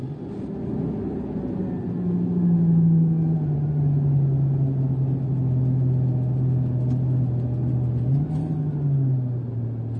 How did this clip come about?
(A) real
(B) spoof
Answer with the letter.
A